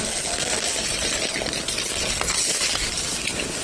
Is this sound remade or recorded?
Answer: recorded